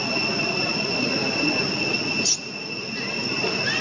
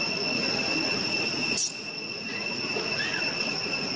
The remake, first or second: second